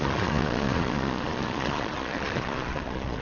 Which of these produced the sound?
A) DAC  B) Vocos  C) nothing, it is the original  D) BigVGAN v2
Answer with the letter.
B